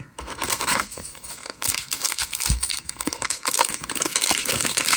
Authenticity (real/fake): fake